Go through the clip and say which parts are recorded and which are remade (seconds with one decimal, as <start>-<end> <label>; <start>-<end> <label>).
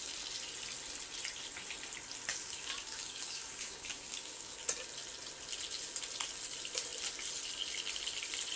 0.0-2.3 recorded; 2.3-4.6 remade; 4.6-8.6 recorded